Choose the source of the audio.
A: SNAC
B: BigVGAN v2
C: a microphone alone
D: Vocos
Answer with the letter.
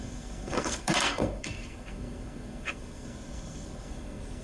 A